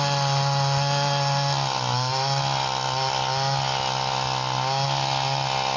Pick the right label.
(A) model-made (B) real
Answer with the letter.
B